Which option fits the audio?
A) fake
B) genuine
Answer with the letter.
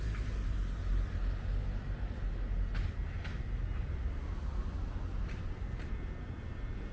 B